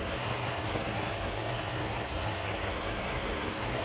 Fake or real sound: fake